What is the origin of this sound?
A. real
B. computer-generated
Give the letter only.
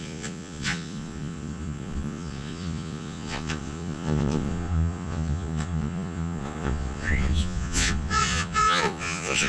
B